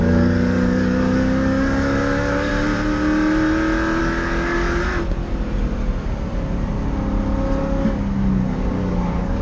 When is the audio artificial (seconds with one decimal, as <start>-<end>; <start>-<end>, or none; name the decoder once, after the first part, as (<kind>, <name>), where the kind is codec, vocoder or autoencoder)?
0.0-2.5 (codec, DAC); 4.0-4.9; 7.6-9.4